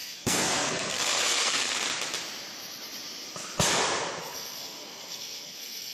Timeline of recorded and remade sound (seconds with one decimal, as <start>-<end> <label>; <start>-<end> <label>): 0.0-1.8 remade; 1.8-4.2 recorded; 4.2-5.9 remade